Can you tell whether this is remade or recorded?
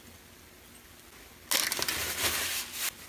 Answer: recorded